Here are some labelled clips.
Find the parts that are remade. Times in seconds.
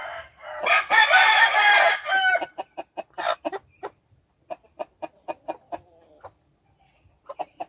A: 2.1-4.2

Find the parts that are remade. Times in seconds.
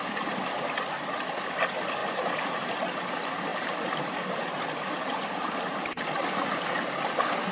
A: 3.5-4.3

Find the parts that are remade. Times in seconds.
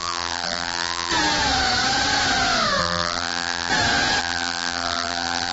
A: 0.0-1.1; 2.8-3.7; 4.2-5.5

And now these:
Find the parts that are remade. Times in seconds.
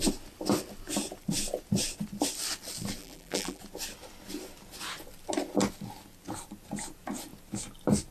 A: 3.0-3.6